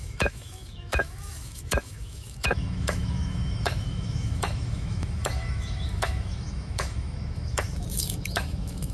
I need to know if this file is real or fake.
fake